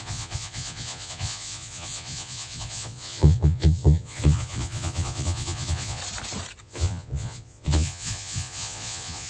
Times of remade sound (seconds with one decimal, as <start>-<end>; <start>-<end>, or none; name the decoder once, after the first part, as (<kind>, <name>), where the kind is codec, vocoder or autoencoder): 0.0-6.0 (vocoder, Vocos); 6.6-9.3